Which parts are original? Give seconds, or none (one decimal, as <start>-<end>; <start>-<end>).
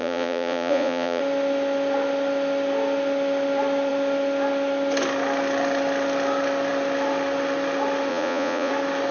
1.2-8.1; 8.7-9.1